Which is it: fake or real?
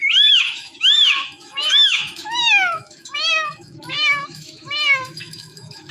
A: fake